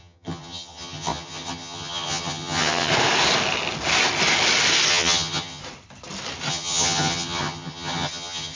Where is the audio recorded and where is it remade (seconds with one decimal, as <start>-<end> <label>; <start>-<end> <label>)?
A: 0.0-2.9 remade; 2.9-4.9 recorded; 4.9-5.6 remade; 5.6-6.5 recorded; 6.5-8.5 remade